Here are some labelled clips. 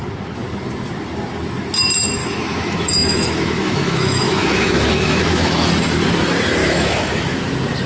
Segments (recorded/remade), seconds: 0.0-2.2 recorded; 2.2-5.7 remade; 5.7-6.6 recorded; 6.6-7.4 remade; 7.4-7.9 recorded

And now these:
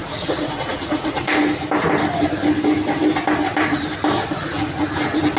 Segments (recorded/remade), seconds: 0.0-1.3 remade; 1.3-4.2 recorded; 4.2-4.8 remade; 4.8-5.4 recorded

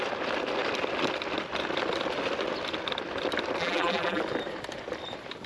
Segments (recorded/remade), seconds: 0.0-3.6 recorded; 3.6-4.2 remade; 4.2-5.5 recorded

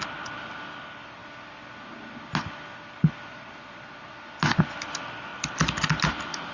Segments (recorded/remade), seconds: 0.0-6.5 recorded

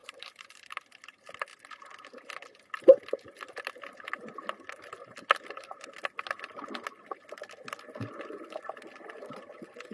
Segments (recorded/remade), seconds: 0.0-0.8 remade; 0.8-9.9 recorded

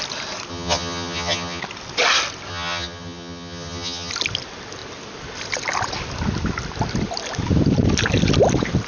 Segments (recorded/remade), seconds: 0.0-0.5 recorded; 0.5-1.6 remade; 1.6-2.5 recorded; 2.5-4.1 remade; 4.1-8.9 recorded

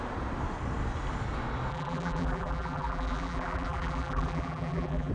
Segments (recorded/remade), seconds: 0.0-1.7 recorded; 1.7-5.1 remade

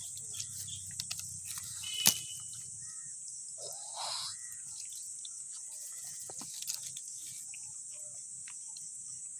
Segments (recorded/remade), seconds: 0.0-4.2 recorded; 4.2-6.4 remade; 6.4-9.4 recorded